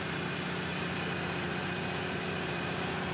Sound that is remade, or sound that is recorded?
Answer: remade